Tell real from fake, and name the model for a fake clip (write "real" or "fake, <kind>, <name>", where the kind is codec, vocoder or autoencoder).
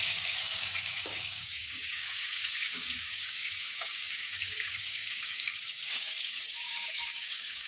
fake, codec, DAC